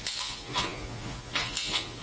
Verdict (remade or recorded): remade